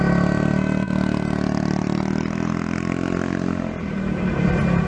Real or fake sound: real